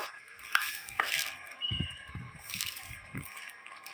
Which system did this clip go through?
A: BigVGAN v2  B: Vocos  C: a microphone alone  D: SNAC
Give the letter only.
D